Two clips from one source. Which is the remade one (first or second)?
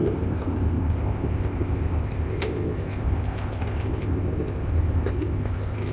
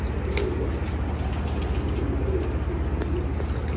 first